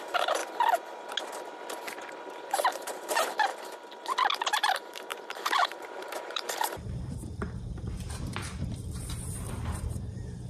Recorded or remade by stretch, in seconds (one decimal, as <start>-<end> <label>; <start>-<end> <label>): 0.0-0.4 remade; 0.4-2.3 recorded; 2.3-3.5 remade; 3.5-4.4 recorded; 4.4-10.5 remade